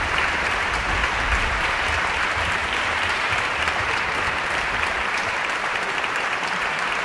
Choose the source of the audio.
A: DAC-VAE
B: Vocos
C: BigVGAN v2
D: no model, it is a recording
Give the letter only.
C